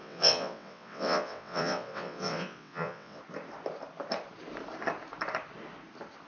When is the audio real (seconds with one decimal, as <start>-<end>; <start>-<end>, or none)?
3.2-6.3